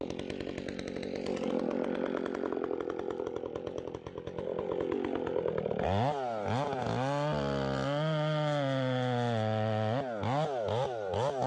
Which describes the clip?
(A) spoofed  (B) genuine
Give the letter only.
B